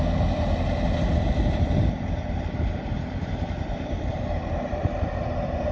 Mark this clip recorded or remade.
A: recorded